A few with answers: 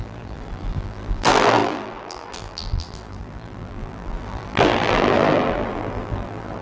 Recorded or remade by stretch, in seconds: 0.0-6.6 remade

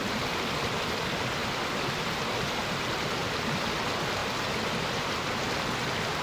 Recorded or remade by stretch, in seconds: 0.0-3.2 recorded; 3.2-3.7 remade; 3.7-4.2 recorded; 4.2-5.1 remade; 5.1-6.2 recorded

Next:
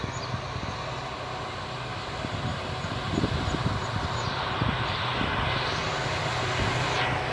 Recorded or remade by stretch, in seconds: 0.0-1.9 recorded; 1.9-5.0 remade; 5.0-7.3 recorded

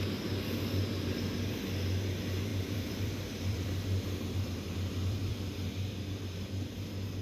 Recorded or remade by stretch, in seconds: 0.0-2.5 recorded; 2.5-5.7 remade; 5.7-7.2 recorded

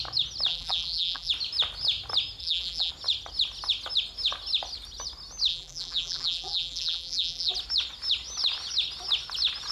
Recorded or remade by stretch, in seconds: 0.0-0.5 recorded; 0.5-1.3 remade; 1.3-2.4 recorded; 2.4-2.9 remade; 2.9-5.5 recorded; 5.5-7.5 remade; 7.5-9.7 recorded